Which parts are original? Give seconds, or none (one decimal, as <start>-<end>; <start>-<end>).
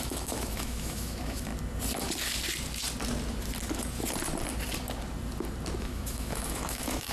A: 1.5-5.8